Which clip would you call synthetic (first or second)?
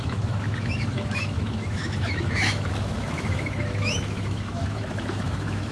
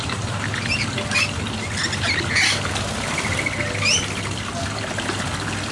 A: first